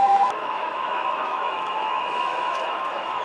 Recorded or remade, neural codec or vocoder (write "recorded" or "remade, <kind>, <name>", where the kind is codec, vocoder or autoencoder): remade, autoencoder, DAC-VAE